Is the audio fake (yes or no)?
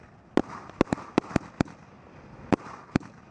no